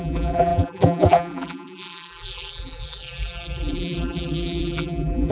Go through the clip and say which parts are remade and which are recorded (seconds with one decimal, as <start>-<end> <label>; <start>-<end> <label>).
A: 0.0-5.3 remade

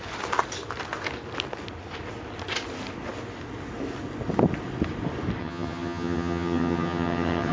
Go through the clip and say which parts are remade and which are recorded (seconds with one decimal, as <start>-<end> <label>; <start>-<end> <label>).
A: 0.0-5.4 recorded; 5.4-7.5 remade

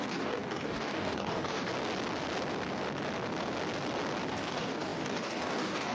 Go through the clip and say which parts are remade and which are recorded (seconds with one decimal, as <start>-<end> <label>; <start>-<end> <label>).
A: 0.0-1.7 remade; 1.7-4.3 recorded; 4.3-5.9 remade

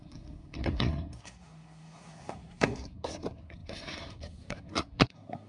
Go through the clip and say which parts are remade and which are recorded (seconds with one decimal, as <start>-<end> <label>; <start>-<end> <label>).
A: 0.0-5.5 remade

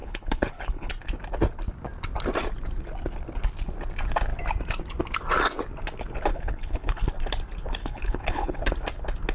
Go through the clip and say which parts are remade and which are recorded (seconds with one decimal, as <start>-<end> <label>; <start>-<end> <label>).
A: 0.0-0.9 remade; 0.9-6.3 recorded; 6.3-7.0 remade; 7.0-7.8 recorded; 7.8-8.7 remade; 8.7-9.3 recorded

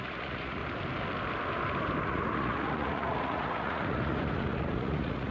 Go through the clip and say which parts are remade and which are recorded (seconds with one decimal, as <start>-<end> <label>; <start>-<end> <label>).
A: 0.0-0.6 remade; 0.6-2.0 recorded; 2.0-5.3 remade

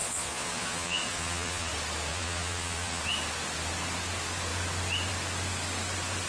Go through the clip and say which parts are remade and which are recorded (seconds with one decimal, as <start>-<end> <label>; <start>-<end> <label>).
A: 0.0-1.7 remade; 1.7-2.1 recorded; 2.1-3.0 remade; 3.0-6.3 recorded

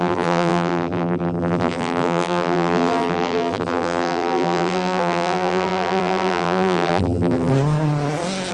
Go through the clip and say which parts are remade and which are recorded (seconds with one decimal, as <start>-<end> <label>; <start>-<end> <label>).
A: 0.0-7.5 remade; 7.5-8.5 recorded